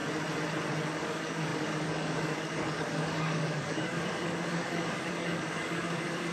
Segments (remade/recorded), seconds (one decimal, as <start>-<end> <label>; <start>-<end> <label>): 0.0-0.9 recorded; 0.9-6.3 remade